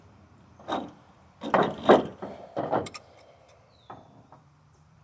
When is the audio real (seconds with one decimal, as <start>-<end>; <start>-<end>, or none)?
none